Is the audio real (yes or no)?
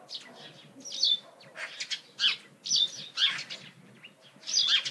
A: yes